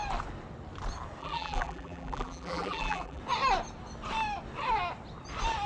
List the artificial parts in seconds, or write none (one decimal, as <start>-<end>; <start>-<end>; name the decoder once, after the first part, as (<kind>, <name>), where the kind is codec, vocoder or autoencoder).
1.2-3.2 (vocoder, BigVGAN v2)